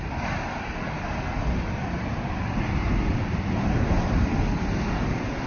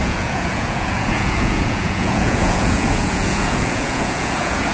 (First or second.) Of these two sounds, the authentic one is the first